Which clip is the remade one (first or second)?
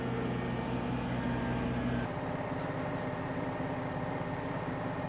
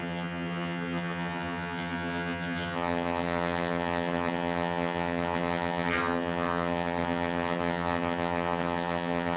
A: second